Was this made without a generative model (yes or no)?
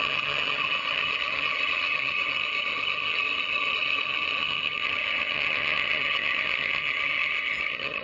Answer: no